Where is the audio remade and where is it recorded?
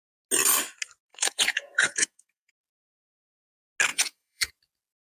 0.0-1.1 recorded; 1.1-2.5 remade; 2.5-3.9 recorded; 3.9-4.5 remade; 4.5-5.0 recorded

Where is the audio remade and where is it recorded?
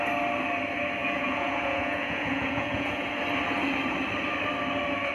0.0-1.0 recorded; 1.0-3.1 remade; 3.1-5.1 recorded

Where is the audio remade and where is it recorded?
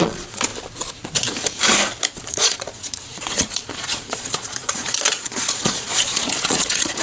0.0-0.5 remade; 0.5-2.3 recorded; 2.3-7.0 remade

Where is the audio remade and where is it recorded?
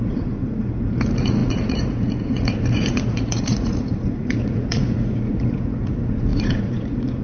0.0-7.2 remade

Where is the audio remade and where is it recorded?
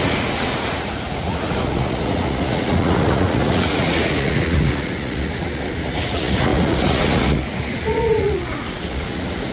0.0-9.5 remade